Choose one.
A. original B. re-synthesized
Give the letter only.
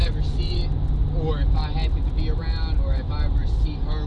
A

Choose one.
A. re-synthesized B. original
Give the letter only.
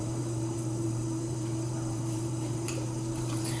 A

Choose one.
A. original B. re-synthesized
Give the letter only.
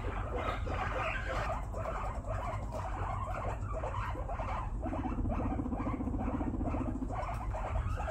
B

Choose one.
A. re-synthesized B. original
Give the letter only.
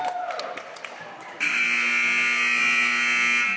B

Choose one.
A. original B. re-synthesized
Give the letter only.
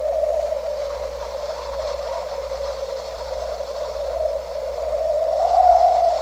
B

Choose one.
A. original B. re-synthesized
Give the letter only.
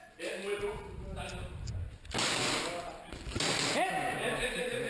A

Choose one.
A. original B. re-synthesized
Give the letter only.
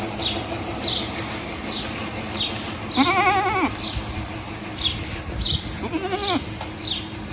A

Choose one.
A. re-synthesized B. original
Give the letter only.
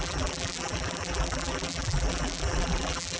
A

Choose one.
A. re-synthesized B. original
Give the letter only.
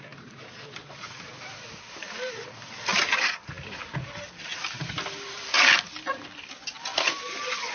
A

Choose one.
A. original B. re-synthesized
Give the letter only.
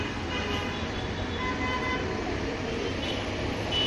A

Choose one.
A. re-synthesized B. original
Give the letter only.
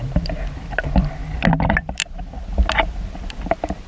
B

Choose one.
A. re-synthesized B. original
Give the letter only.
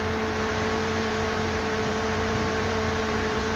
A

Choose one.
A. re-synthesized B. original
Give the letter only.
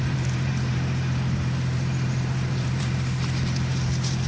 A